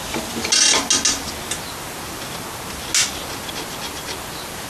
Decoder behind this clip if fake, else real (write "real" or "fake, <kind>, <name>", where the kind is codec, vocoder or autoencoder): real